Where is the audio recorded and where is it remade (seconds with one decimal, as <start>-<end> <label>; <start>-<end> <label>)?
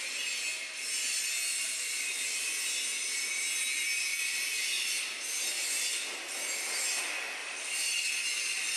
0.0-1.5 recorded; 1.5-2.6 remade; 2.6-4.1 recorded; 4.1-6.2 remade; 6.2-7.4 recorded; 7.4-8.1 remade; 8.1-8.8 recorded